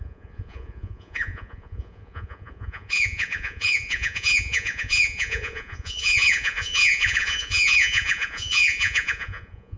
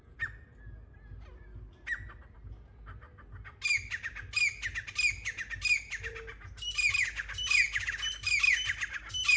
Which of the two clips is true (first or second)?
second